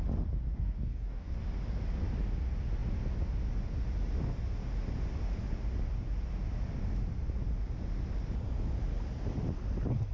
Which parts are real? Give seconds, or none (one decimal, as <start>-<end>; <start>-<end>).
0.0-0.5; 1.4-10.1